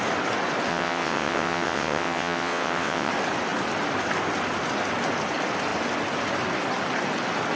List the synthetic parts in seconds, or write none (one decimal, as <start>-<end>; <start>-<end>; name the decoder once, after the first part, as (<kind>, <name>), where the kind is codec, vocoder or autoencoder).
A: 0.7-3.1 (vocoder, WaveNeXt)